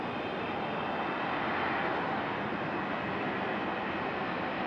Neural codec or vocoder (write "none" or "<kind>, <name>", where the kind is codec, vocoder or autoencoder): none